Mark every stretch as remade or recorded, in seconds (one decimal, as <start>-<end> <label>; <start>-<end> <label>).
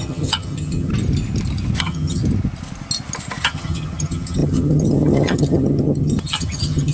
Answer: 0.0-0.9 remade; 0.9-1.8 recorded; 1.8-2.2 remade; 2.2-3.4 recorded; 3.4-6.9 remade